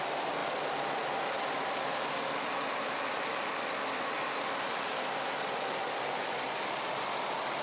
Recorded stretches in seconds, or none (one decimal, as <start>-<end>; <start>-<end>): 0.0-7.6

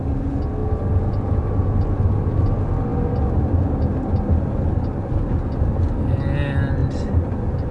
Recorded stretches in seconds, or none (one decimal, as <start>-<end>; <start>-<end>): 0.0-7.7

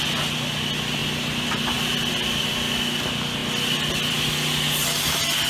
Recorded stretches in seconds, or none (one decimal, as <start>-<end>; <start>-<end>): 0.0-5.5

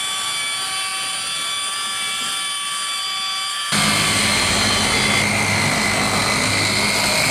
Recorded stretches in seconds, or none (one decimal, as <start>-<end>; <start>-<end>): 0.0-7.3